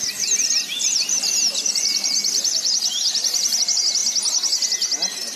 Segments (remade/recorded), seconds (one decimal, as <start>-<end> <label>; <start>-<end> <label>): 0.0-0.4 recorded; 0.4-3.6 remade; 3.6-5.4 recorded